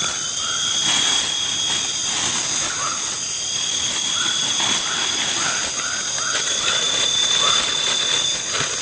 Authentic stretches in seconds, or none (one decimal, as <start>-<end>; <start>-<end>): 0.0-8.8